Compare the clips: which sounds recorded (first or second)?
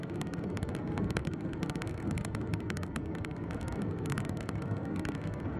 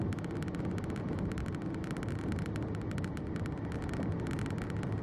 second